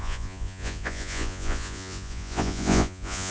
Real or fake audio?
fake